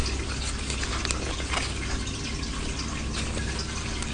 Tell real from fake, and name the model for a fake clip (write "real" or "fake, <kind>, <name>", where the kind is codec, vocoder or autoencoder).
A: real